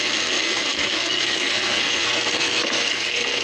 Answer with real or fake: fake